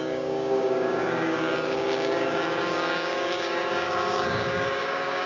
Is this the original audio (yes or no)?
no